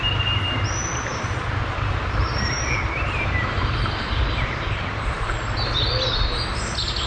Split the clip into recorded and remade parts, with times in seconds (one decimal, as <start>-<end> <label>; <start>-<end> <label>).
0.0-1.1 recorded; 1.1-5.4 remade; 5.4-7.1 recorded